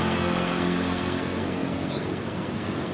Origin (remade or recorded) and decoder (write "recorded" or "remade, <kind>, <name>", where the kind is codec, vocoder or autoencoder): remade, codec, SNAC